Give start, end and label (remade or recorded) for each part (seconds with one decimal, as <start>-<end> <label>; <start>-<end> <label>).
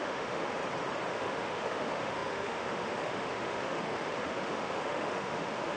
0.0-0.6 remade; 0.6-1.1 recorded; 1.1-5.8 remade